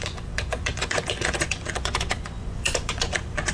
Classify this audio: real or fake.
fake